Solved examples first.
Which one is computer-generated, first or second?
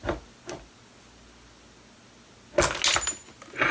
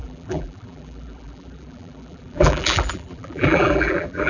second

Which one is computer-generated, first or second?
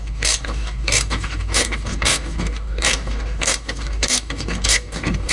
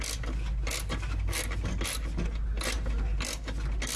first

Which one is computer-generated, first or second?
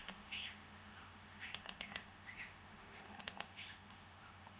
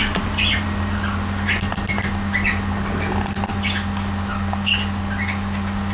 first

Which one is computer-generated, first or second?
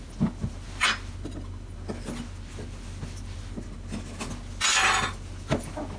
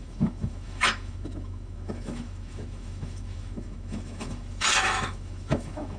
second